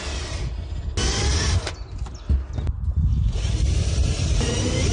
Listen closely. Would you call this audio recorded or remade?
recorded